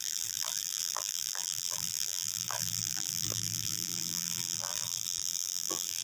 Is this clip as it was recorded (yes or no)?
no